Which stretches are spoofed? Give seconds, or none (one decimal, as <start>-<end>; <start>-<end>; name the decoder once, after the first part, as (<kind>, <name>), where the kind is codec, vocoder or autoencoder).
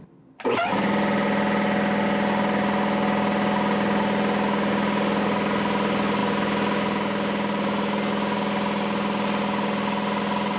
none